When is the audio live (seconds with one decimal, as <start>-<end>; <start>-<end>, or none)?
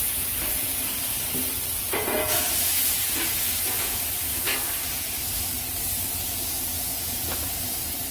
0.7-1.8; 4.5-6.1